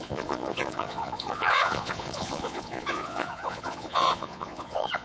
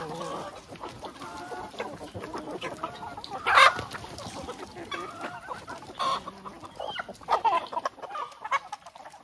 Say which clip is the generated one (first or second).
first